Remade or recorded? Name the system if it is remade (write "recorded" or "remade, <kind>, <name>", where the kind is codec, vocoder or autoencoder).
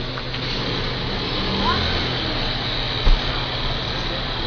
recorded